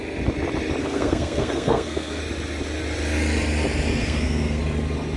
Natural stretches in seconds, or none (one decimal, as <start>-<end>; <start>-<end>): 0.0-0.8; 2.2-4.0; 4.6-5.2